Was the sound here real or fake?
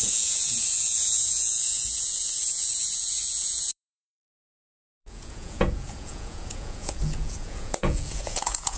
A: fake